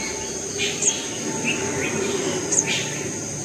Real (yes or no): yes